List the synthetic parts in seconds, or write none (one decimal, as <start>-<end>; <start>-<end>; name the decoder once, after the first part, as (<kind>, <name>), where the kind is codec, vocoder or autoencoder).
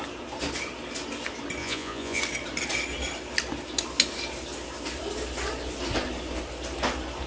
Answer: 1.6-2.2 (vocoder, Vocos)